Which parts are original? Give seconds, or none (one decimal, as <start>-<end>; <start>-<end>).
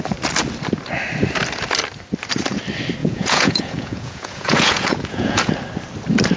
0.0-3.0; 5.5-6.4